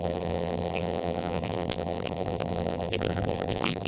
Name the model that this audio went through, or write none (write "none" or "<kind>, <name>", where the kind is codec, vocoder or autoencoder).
vocoder, BigVGAN v2